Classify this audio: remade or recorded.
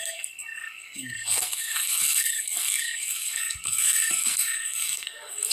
remade